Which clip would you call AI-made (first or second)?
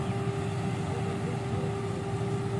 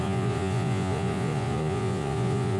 second